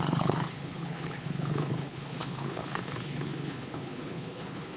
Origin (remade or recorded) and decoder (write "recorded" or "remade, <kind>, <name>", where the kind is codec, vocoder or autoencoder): remade, codec, HILCodec